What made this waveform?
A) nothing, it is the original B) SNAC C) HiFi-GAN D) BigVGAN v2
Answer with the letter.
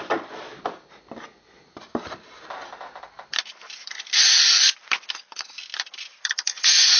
D